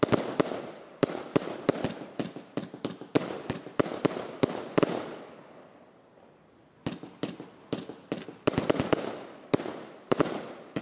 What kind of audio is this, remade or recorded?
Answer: recorded